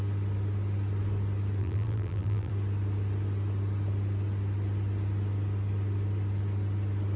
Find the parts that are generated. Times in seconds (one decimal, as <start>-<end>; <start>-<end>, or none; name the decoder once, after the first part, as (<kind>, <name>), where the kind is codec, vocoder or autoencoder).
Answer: 1.6-2.5 (vocoder, BigVGAN v2)